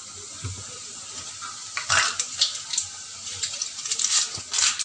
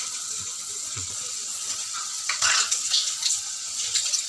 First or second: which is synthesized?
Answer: second